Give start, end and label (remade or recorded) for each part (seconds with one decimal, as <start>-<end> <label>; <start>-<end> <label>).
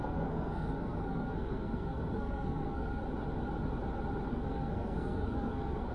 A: 0.0-3.0 remade; 3.0-4.3 recorded; 4.3-5.9 remade